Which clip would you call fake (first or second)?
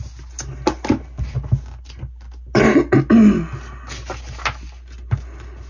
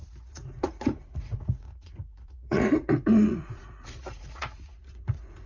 second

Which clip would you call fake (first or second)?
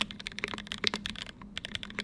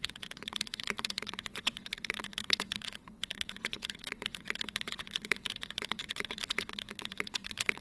second